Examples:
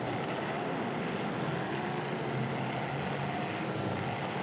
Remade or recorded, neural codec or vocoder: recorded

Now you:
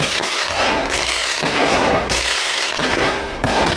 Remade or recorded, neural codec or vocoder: remade, codec, SNAC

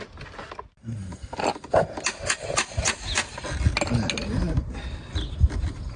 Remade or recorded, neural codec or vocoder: recorded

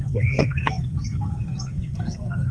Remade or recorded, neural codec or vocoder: remade, codec, SNAC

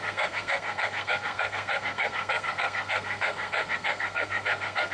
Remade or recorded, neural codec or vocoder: remade, codec, SNAC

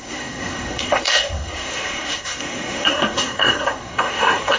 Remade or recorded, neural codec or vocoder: remade, codec, SNAC